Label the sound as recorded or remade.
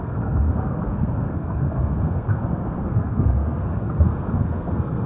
remade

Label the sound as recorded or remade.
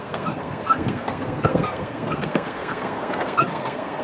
remade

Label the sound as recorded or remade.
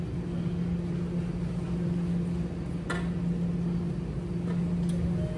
recorded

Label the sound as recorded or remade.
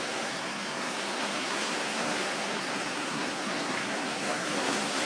remade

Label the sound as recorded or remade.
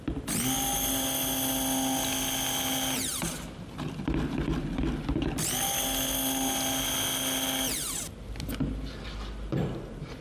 recorded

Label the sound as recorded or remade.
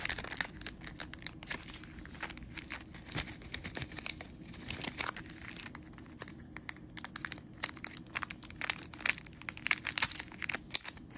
recorded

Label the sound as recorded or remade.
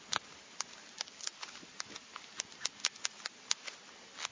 recorded